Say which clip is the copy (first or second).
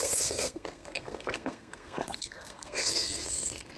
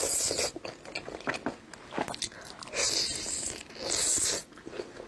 first